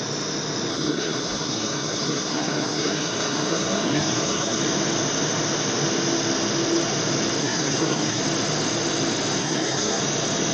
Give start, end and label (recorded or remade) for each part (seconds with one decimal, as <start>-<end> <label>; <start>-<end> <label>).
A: 0.0-0.7 recorded; 0.7-4.6 remade; 4.6-7.4 recorded; 7.4-8.2 remade; 8.2-9.4 recorded; 9.4-10.0 remade; 10.0-10.5 recorded